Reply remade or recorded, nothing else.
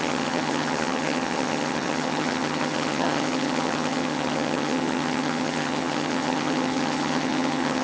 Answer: remade